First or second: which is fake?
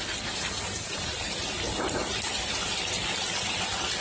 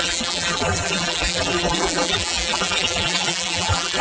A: second